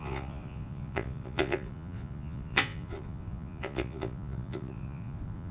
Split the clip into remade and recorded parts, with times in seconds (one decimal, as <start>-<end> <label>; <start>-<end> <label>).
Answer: 0.0-5.5 remade